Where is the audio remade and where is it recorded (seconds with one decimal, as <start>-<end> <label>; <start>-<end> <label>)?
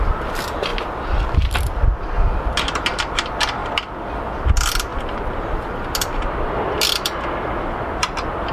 0.0-8.5 recorded